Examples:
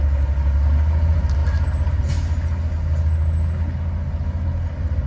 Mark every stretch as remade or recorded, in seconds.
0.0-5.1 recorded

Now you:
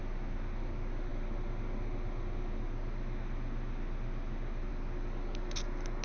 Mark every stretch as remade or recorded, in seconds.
0.0-6.0 recorded

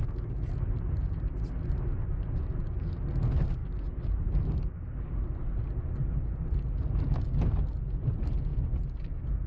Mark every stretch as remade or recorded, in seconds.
0.0-9.5 recorded